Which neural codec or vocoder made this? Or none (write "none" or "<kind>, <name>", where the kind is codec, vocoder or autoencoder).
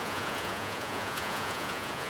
vocoder, Vocos